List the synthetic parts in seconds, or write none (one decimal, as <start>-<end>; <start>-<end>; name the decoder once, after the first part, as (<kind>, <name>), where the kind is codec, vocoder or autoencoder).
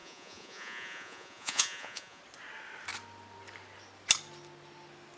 0.0-2.2 (vocoder, Vocos)